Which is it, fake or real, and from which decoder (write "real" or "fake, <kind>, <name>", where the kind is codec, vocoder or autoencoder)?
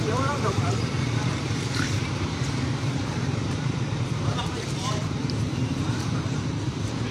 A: fake, vocoder, BigVGAN v2